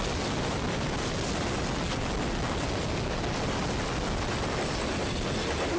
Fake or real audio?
real